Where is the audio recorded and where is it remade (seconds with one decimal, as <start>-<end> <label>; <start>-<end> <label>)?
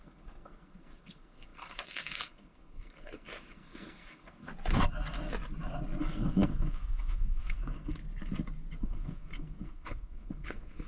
0.0-4.5 remade; 4.5-6.0 recorded; 6.0-8.0 remade; 8.0-8.8 recorded; 8.8-10.9 remade